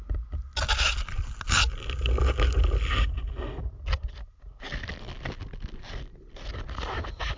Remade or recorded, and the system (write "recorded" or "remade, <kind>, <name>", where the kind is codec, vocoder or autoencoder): recorded